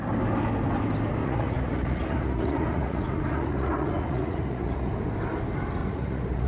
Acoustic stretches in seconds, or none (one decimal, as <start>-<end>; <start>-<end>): 0.0-1.2; 4.9-5.8